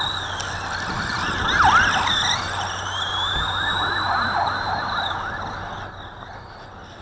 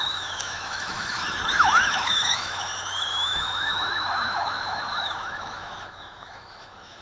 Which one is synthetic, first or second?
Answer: second